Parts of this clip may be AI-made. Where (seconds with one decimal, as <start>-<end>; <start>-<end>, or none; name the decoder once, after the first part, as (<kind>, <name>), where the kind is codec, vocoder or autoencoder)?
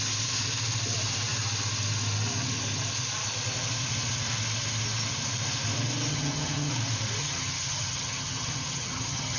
6.1-6.7 (vocoder, HiFi-GAN); 7.2-9.4